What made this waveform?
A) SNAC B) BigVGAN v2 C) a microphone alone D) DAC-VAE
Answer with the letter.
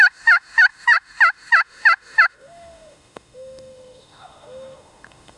D